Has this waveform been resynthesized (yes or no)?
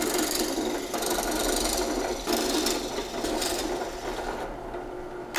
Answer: no